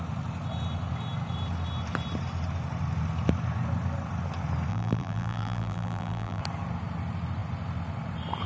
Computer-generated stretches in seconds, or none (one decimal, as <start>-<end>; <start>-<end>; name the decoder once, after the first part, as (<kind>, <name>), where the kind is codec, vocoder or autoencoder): 4.7-6.4 (vocoder, BigVGAN v2)